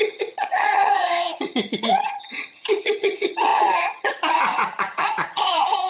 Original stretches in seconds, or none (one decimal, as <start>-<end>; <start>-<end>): none